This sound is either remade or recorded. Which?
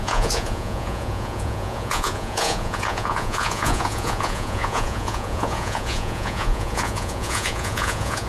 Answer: remade